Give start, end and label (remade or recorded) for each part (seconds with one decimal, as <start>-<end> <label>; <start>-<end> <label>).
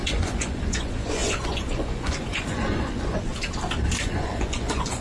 0.0-3.3 remade; 3.3-4.0 recorded; 4.0-5.0 remade